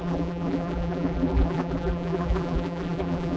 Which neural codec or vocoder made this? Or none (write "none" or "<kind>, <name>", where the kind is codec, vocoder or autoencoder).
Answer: vocoder, BigVGAN v2